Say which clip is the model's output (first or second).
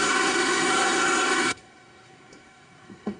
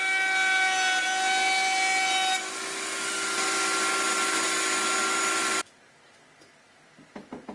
first